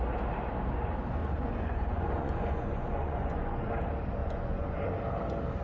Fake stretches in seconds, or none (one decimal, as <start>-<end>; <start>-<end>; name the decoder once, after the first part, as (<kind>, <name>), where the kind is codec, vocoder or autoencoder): 1.2-3.7 (vocoder, Vocos); 4.2-4.8